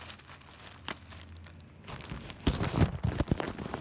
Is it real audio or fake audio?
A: real